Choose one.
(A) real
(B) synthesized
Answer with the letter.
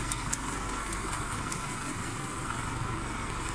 B